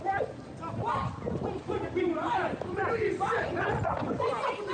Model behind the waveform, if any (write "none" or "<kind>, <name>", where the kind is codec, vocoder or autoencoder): none